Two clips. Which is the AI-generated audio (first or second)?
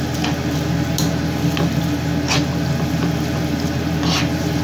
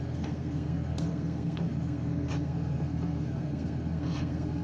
second